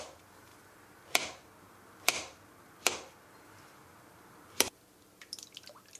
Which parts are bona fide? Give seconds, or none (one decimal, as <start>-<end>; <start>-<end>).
0.5-4.1